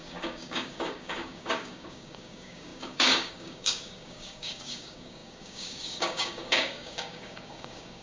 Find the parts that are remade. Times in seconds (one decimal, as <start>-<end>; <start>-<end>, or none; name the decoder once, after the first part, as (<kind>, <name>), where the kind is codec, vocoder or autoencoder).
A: 0.0-8.0 (codec, DAC)